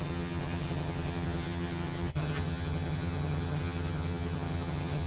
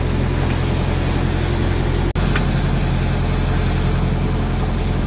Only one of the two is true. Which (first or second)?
second